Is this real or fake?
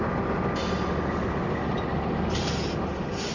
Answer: real